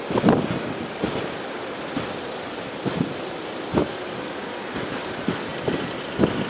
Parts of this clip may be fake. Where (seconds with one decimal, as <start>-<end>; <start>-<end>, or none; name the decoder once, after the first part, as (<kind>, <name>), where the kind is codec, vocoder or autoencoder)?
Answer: 3.8-5.1 (vocoder, BigVGAN v2); 5.5-6.0